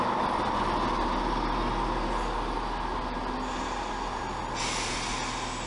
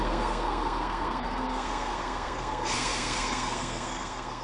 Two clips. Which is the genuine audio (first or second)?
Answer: first